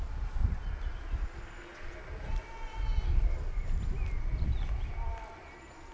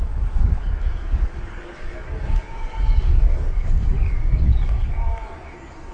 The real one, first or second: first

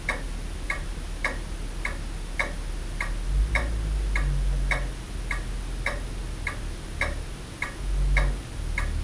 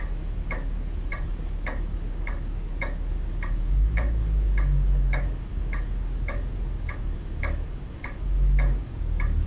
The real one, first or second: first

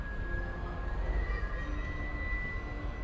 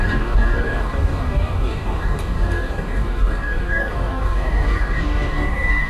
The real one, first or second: first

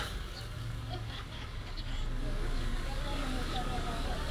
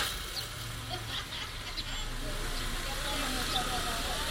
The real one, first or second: second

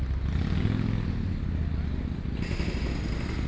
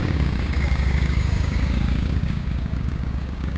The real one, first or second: first